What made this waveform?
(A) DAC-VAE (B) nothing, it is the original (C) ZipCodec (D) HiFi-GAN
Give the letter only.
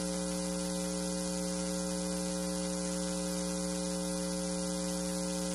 B